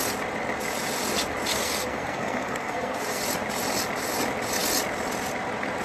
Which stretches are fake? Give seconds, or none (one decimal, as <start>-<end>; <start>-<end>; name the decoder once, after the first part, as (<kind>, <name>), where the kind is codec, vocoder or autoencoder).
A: 1.5-3.2 (codec, SNAC)